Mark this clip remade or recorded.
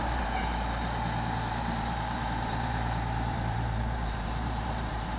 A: remade